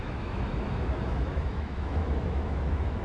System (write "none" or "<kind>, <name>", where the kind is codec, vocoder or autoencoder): autoencoder, DAC-VAE